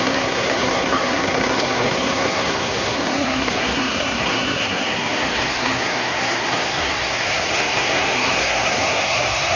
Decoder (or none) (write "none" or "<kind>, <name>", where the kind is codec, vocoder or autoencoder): codec, SNAC